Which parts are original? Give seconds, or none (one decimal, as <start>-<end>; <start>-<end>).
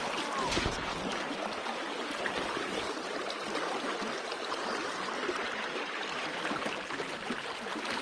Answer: 0.0-8.0